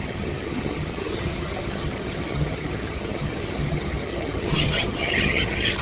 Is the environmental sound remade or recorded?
remade